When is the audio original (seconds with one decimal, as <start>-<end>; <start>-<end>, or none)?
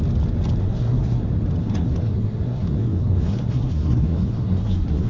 0.0-0.6; 1.2-1.6